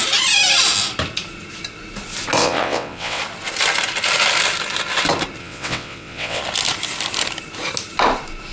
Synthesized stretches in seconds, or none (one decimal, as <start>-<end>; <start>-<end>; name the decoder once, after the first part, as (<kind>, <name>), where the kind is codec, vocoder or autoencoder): 2.4-3.2 (vocoder, WaveNeXt); 5.4-6.4